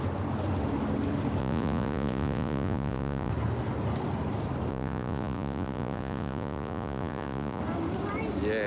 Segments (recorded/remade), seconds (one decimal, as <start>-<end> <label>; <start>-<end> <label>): 0.0-1.4 recorded; 1.4-3.3 remade; 3.3-4.7 recorded; 4.7-7.6 remade; 7.6-8.7 recorded